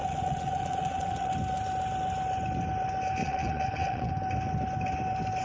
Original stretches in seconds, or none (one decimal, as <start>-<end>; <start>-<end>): 1.3-3.2; 4.1-5.4